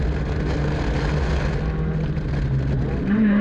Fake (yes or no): no